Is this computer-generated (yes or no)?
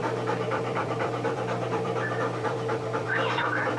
yes